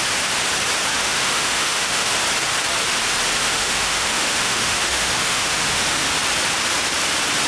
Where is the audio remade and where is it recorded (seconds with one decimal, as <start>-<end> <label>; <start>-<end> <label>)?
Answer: 0.0-0.9 recorded; 0.9-2.2 remade; 2.2-3.4 recorded; 3.4-6.0 remade; 6.0-7.5 recorded